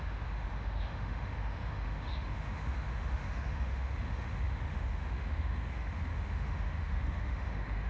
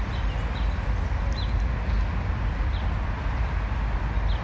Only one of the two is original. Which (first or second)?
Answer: second